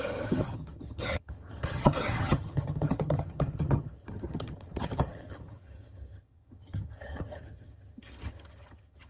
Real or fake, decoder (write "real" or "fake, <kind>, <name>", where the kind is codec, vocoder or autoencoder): fake, vocoder, HiFi-GAN